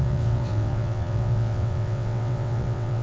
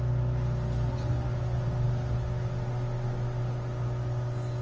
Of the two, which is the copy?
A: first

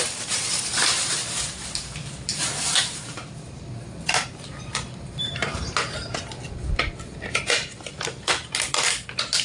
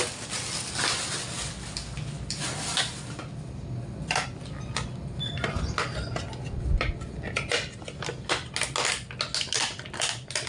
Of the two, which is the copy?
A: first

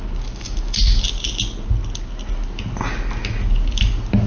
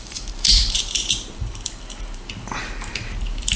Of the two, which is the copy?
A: second